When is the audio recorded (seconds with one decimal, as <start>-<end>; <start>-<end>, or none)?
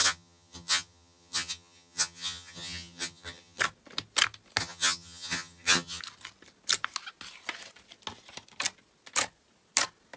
3.6-4.6; 6.0-10.2